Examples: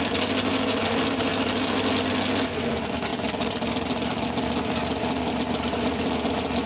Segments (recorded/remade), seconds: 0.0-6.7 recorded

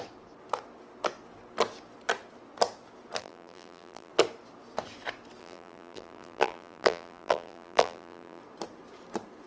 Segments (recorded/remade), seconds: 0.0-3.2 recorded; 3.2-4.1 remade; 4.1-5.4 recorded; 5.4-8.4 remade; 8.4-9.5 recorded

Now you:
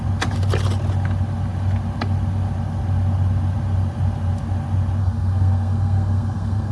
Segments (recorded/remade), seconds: 0.0-5.0 recorded; 5.0-6.7 remade

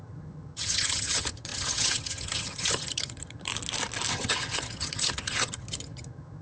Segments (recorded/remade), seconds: 0.0-3.5 remade; 3.5-4.1 recorded; 4.1-6.4 remade

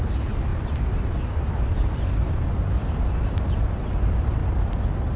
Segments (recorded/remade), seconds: 0.0-4.4 remade; 4.4-5.2 recorded

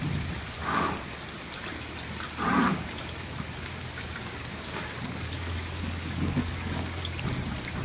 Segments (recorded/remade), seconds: 0.0-0.6 recorded; 0.6-1.2 remade; 1.2-2.6 recorded; 2.6-7.2 remade; 7.2-7.8 recorded

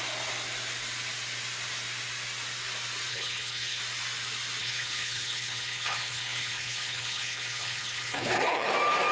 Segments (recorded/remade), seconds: 0.0-3.1 recorded; 3.1-3.8 remade; 3.8-4.6 recorded; 4.6-8.7 remade; 8.7-9.1 recorded